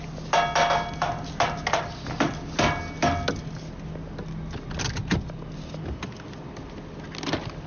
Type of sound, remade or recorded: recorded